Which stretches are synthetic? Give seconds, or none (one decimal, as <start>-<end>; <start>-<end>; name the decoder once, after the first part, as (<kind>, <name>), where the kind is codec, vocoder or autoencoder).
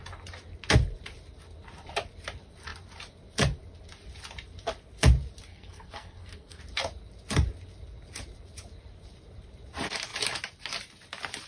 5.5-6.6 (codec, SNAC)